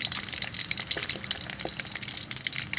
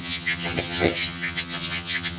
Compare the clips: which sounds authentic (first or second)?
first